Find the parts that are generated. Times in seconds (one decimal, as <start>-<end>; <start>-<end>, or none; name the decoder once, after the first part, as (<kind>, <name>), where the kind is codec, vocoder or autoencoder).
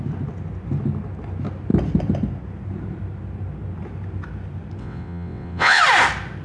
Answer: 4.8-5.8 (vocoder, WaveNeXt)